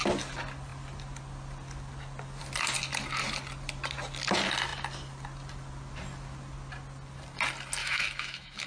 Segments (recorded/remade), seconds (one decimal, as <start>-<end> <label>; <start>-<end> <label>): 0.0-7.8 recorded; 7.8-8.7 remade

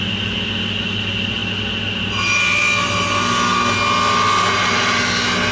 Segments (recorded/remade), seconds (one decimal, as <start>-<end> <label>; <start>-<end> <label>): 0.0-5.5 recorded

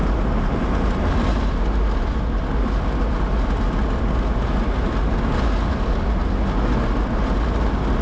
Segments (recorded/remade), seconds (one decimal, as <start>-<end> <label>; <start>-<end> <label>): 0.0-8.0 recorded